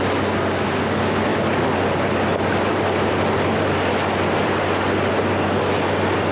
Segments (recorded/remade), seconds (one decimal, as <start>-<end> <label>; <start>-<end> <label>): 0.0-6.3 recorded